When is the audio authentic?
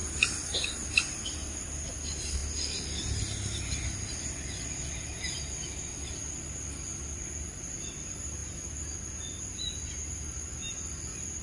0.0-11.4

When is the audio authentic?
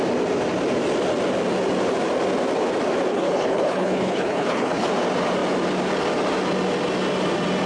0.0-3.1; 4.9-7.7